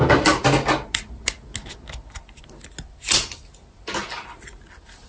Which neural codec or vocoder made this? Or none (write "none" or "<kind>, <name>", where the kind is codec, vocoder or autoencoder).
none